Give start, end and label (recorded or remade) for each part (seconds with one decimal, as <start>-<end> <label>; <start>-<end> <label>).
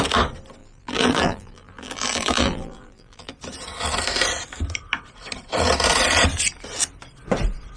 0.0-0.6 recorded; 0.6-3.3 remade; 3.3-7.8 recorded